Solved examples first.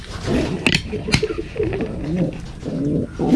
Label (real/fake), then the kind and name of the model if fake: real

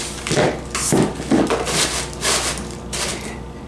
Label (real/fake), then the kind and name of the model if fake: real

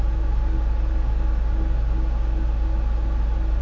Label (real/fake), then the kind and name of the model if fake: real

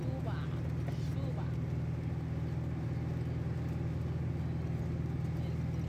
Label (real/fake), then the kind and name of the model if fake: real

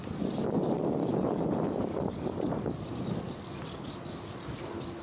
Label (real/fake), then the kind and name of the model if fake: real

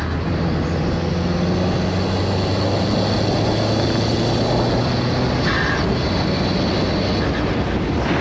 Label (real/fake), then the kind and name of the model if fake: real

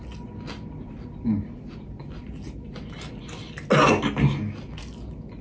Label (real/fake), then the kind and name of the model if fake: real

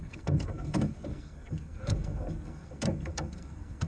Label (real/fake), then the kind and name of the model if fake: fake, codec, SNAC